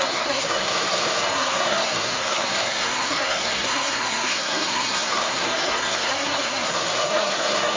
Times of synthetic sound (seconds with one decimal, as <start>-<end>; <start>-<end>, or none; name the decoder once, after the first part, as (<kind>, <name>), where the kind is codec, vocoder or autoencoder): 0.0-7.8 (codec, SNAC)